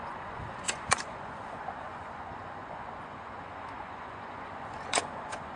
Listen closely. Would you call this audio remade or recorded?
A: remade